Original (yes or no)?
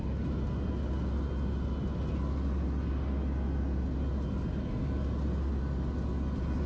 yes